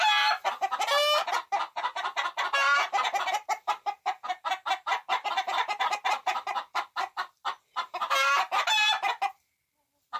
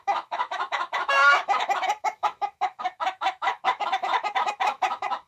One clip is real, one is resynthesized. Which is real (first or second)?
first